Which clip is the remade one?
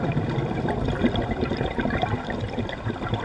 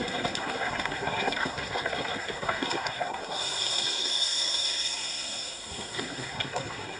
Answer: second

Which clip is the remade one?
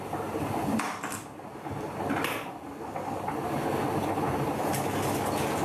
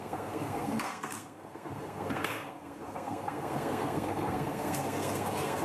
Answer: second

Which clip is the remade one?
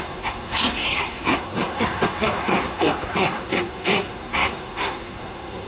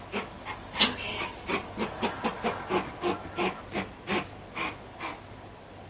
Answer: first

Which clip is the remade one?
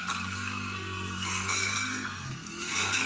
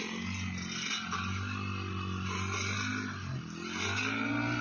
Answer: first